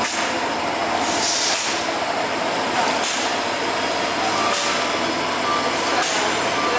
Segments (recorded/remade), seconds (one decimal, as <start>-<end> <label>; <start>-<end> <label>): 0.0-6.8 recorded